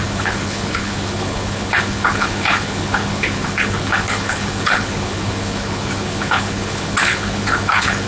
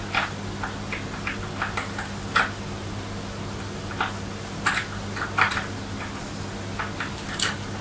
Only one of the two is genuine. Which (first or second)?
second